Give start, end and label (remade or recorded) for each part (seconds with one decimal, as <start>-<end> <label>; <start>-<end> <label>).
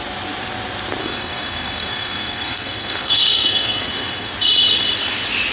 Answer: 0.0-1.0 recorded; 1.0-4.3 remade; 4.3-5.5 recorded